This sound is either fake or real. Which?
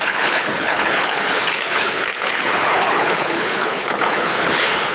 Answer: fake